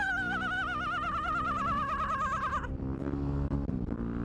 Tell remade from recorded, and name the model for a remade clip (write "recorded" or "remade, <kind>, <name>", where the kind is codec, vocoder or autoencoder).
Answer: remade, vocoder, BigVGAN v2